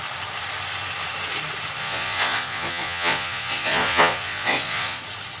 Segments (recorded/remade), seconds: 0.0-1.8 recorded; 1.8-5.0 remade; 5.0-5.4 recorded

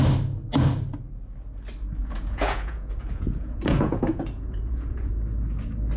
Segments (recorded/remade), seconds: 0.0-2.0 recorded; 2.0-5.1 remade; 5.1-6.0 recorded

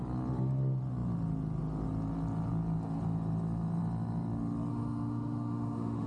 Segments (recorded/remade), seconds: 0.0-4.7 recorded; 4.7-6.1 remade

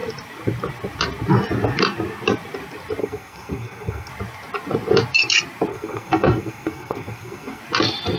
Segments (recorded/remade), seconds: 0.0-3.0 recorded; 3.0-4.1 remade; 4.1-5.7 recorded; 5.7-7.6 remade; 7.6-8.2 recorded

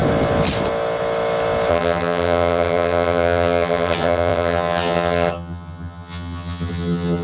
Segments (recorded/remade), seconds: 0.0-1.7 recorded; 1.7-7.2 remade